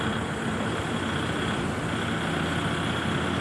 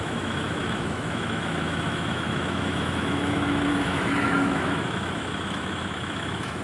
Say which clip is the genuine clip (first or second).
first